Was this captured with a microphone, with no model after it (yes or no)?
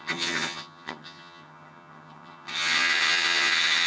no